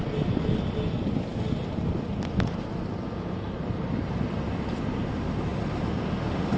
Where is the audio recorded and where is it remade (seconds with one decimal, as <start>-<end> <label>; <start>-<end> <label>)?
0.0-6.6 recorded